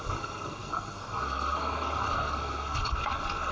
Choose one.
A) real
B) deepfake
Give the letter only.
B